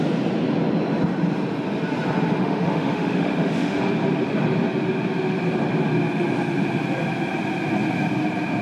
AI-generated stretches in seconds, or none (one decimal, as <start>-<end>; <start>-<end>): 2.4-3.8